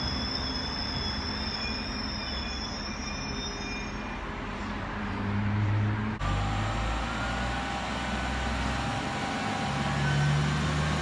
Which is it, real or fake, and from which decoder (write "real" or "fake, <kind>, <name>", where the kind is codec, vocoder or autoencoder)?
real